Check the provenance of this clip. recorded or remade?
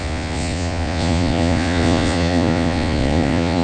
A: remade